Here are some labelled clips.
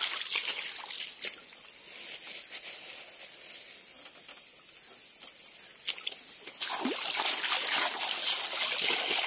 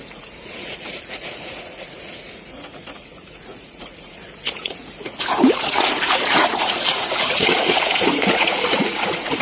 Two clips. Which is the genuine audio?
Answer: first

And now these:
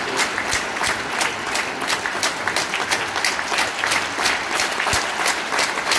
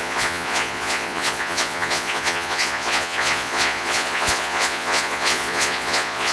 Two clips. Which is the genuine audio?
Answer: first